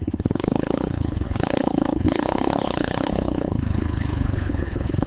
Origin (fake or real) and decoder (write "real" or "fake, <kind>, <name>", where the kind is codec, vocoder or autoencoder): fake, codec, HILCodec